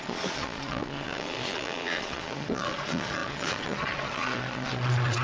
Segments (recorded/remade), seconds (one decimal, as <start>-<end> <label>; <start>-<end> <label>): 0.0-5.2 remade